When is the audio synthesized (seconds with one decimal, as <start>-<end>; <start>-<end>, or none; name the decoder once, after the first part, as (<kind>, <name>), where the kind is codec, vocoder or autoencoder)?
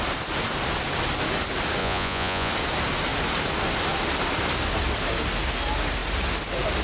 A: 1.8-2.5 (vocoder, Vocos)